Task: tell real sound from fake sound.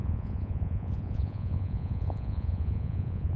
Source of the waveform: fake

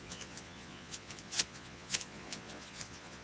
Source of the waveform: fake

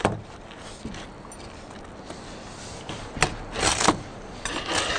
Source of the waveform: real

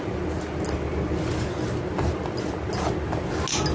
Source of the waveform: real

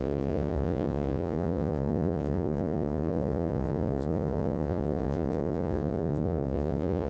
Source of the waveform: fake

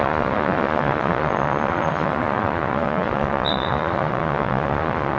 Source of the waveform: fake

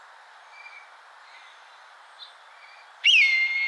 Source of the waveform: real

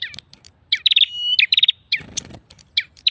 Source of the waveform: real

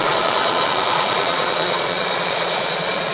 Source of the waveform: fake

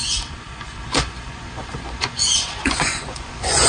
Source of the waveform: fake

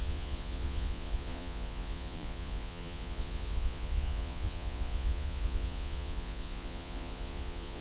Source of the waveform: fake